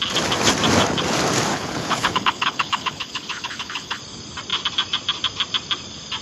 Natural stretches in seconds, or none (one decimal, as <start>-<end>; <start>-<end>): 0.0-1.5; 4.0-6.2